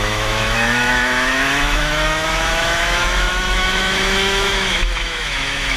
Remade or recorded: remade